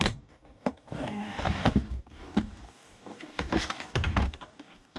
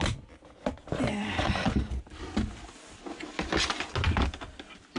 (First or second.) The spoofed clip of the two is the first